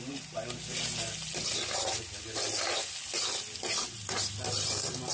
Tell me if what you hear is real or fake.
real